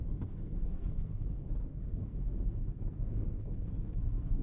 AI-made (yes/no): yes